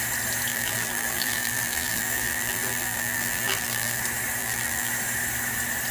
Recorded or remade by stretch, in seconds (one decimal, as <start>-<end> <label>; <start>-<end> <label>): 0.0-0.5 recorded; 0.5-4.0 remade; 4.0-4.4 recorded; 4.4-4.9 remade; 4.9-5.9 recorded